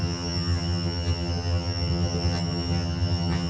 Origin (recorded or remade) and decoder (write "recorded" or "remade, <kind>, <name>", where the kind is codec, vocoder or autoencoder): remade, vocoder, HiFi-GAN